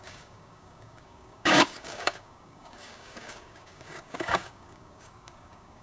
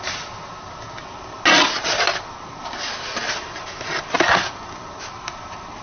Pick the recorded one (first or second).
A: second